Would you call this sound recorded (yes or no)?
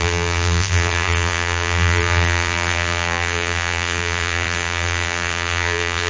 no